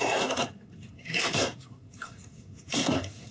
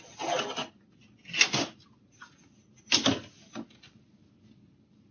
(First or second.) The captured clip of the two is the second